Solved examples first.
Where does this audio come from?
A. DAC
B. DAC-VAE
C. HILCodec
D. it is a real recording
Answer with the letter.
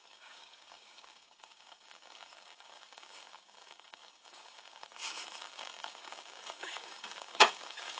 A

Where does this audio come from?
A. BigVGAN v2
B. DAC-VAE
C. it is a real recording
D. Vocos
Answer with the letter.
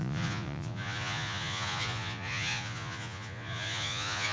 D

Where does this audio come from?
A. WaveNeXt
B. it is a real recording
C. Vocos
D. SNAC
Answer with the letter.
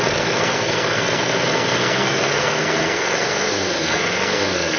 D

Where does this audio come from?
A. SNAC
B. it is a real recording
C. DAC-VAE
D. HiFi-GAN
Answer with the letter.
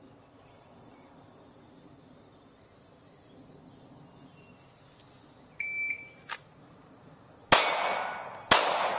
B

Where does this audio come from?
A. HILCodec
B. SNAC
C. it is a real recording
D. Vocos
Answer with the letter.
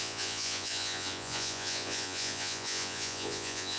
D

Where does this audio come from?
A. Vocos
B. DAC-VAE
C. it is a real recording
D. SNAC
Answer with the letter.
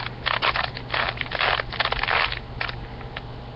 C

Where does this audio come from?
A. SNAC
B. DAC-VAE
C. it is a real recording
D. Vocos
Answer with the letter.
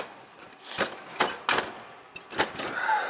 C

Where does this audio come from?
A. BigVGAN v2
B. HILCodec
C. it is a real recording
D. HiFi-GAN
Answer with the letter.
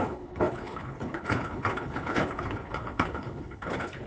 B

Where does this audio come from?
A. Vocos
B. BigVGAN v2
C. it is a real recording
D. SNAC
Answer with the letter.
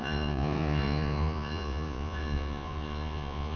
A